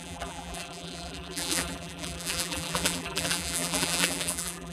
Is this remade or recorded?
remade